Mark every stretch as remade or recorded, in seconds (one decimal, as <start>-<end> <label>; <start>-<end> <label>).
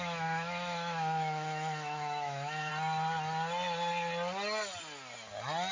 0.0-2.7 remade; 2.7-5.7 recorded